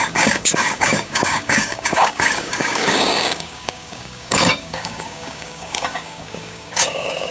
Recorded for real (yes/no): no